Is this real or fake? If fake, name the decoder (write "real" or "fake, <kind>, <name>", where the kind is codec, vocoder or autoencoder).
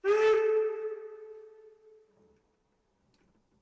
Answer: real